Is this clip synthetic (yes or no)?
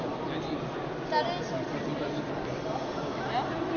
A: no